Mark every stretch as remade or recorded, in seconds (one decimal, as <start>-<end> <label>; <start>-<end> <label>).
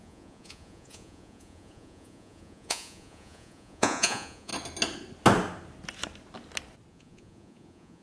0.0-4.5 remade; 4.5-6.9 recorded; 6.9-8.0 remade